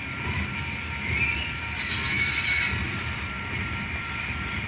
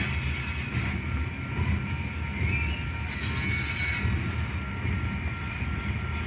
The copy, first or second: first